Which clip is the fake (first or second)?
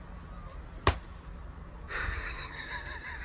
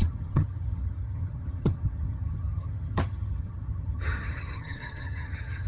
second